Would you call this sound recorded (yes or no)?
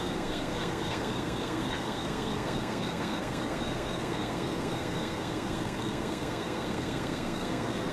no